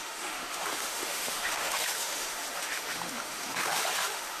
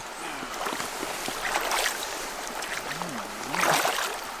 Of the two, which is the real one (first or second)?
second